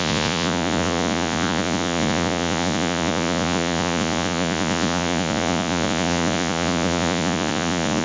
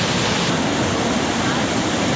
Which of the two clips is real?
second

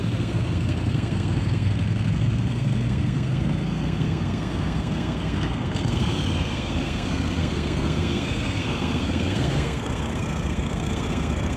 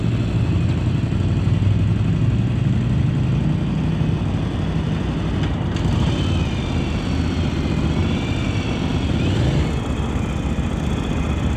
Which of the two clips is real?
second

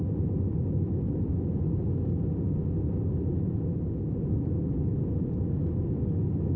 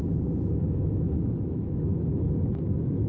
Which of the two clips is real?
first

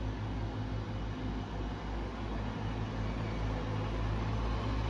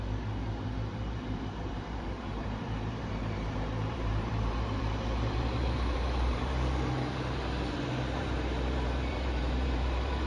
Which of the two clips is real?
first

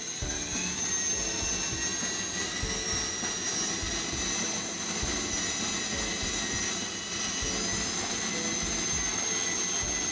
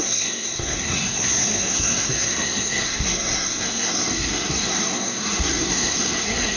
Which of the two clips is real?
first